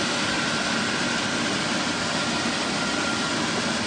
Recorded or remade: recorded